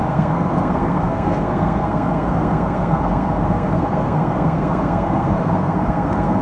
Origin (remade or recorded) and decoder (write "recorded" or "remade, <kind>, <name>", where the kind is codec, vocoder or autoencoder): remade, codec, SNAC